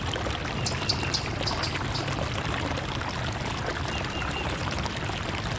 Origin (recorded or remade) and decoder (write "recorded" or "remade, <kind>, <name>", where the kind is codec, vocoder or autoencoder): recorded